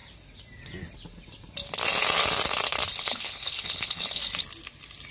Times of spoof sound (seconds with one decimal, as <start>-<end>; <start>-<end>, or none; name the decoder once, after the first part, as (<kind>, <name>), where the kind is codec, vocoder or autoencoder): 3.0-4.2 (codec, HILCodec)